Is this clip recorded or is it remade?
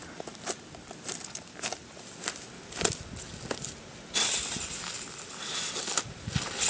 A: recorded